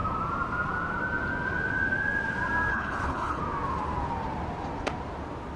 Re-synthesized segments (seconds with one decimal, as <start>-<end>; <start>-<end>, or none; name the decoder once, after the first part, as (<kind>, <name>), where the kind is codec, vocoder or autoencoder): 2.7-3.4 (codec, HILCodec)